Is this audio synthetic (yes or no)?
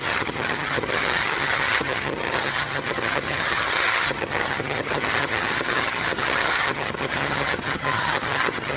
yes